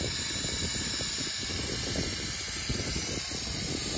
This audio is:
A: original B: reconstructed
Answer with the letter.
A